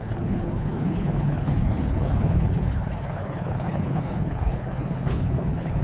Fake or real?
fake